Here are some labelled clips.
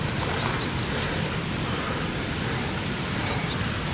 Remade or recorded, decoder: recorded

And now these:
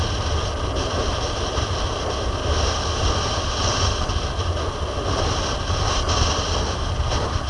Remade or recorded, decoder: recorded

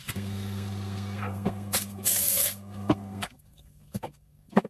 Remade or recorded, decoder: remade, codec, SNAC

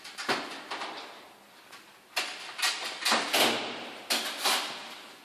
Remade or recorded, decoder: recorded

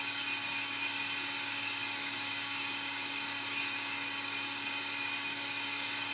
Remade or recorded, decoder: remade, codec, DAC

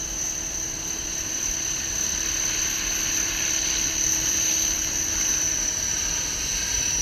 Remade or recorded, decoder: remade, vocoder, BigVGAN v2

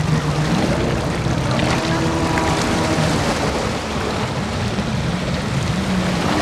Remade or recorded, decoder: recorded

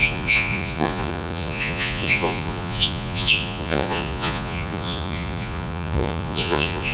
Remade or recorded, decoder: remade, vocoder, Vocos